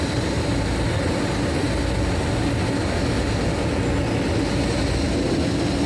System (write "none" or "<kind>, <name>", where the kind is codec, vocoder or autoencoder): none